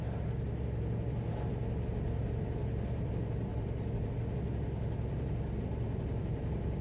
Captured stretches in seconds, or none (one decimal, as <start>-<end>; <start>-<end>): 0.0-2.2; 3.1-3.5; 4.1-5.7